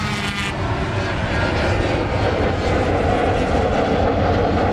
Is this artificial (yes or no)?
no